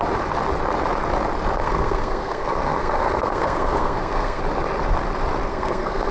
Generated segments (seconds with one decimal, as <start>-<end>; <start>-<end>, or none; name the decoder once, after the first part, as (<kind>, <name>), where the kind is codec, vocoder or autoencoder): 1.6-4.4 (codec, SNAC); 5.5-6.1